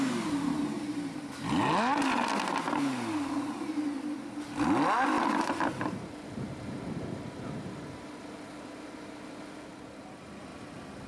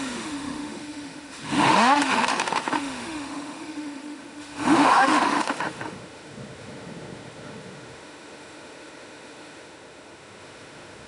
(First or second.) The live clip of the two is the first